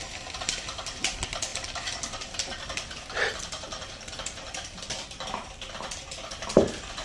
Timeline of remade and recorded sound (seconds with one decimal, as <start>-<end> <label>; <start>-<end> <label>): 0.0-1.5 recorded; 1.5-5.7 remade; 5.7-7.0 recorded